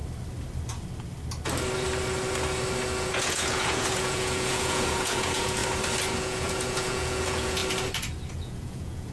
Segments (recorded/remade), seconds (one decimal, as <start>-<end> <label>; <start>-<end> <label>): 0.0-3.0 recorded; 3.0-5.6 remade; 5.6-6.2 recorded; 6.2-7.6 remade; 7.6-8.3 recorded; 8.3-9.1 remade